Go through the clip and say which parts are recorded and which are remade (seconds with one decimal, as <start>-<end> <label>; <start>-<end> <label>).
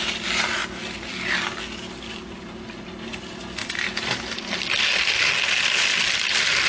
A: 0.0-6.7 recorded